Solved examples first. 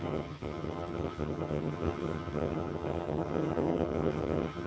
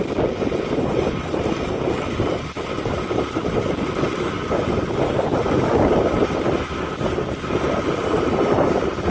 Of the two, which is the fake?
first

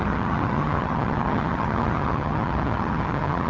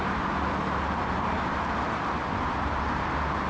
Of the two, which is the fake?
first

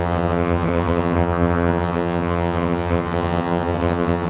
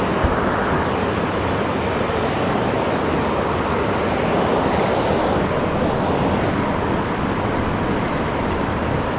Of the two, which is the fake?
first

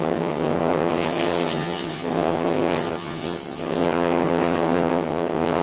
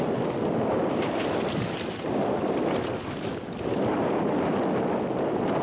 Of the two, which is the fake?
first